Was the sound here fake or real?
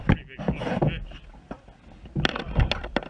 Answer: real